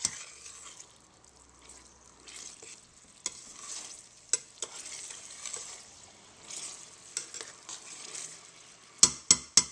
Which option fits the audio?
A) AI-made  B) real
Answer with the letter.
B